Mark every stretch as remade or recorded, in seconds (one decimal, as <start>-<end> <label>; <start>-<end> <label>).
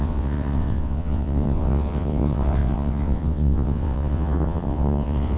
0.0-5.4 remade